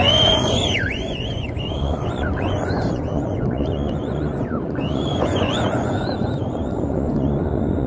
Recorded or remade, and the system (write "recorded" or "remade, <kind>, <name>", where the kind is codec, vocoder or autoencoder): remade, vocoder, Vocos